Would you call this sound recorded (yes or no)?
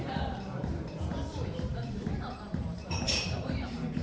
no